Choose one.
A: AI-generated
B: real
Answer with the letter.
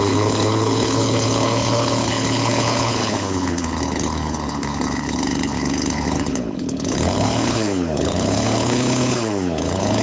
A